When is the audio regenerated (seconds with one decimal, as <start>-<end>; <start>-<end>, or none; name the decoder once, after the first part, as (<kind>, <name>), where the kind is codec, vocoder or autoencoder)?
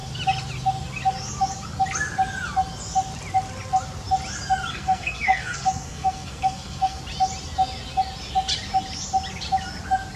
4.7-7.0 (codec, SNAC)